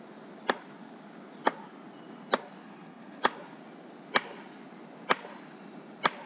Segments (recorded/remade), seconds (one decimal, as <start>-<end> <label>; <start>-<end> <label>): 0.0-2.6 recorded; 2.6-3.2 remade; 3.2-6.3 recorded